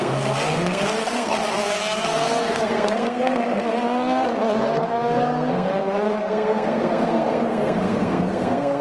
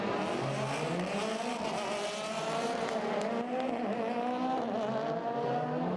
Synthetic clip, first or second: first